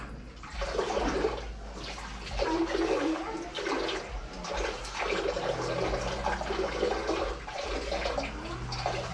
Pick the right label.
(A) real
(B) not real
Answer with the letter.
A